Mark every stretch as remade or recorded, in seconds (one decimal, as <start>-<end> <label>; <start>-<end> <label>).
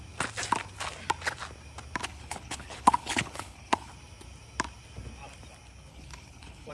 0.0-2.0 recorded; 2.0-3.9 remade; 3.9-5.9 recorded; 5.9-6.7 remade